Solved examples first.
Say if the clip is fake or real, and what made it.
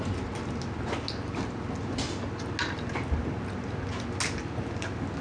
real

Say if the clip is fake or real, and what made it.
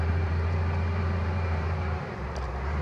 fake, vocoder, BigVGAN v2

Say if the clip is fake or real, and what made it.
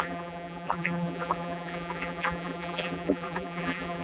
fake, vocoder, BigVGAN v2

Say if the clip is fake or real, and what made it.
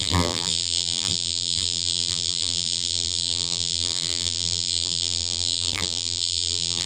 fake, vocoder, BigVGAN v2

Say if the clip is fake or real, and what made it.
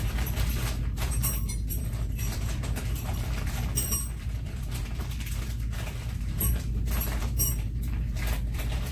fake, vocoder, BigVGAN v2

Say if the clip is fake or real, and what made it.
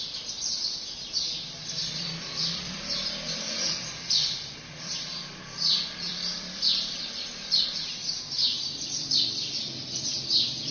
fake, vocoder, BigVGAN v2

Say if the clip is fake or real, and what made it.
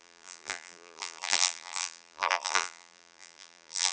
fake, vocoder, BigVGAN v2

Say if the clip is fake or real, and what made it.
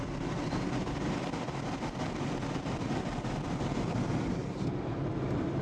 fake, vocoder, BigVGAN v2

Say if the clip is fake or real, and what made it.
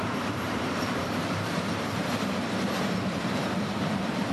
fake, vocoder, BigVGAN v2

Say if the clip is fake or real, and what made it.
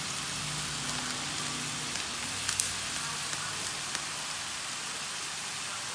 real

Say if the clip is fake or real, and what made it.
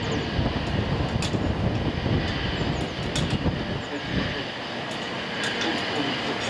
real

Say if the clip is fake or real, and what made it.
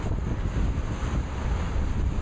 real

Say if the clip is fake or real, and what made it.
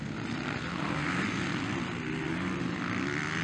real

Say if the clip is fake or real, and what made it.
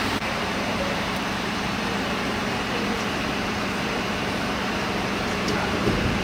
fake, vocoder, BigVGAN v2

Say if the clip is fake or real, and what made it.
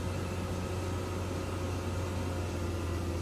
real